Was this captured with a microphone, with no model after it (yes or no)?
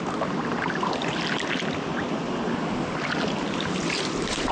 yes